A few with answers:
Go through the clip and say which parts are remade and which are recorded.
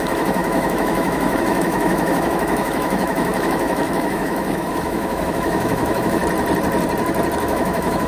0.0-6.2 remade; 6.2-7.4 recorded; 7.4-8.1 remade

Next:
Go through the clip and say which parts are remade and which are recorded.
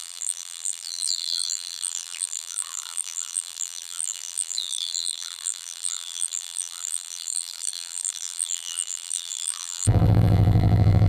0.0-11.1 remade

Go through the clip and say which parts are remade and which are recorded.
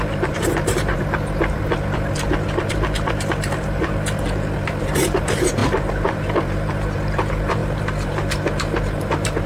0.0-0.9 remade; 0.9-2.7 recorded; 2.7-9.5 remade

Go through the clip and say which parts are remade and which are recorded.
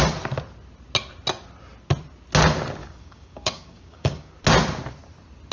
0.0-2.8 recorded; 2.8-4.3 remade; 4.3-5.5 recorded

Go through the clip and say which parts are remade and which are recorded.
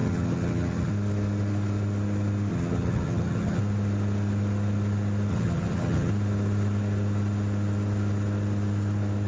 0.0-0.9 remade; 0.9-2.5 recorded; 2.5-3.6 remade; 3.6-5.3 recorded; 5.3-6.1 remade; 6.1-9.3 recorded